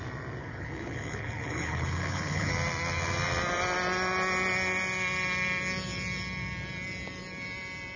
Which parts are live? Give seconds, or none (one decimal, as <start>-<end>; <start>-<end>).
0.0-0.4; 2.5-8.0